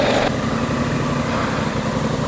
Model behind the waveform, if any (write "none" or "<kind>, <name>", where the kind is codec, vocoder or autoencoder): none